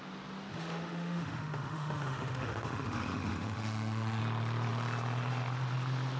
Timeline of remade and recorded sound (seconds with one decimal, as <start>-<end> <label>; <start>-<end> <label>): 0.0-0.5 recorded; 0.5-4.2 remade; 4.2-6.2 recorded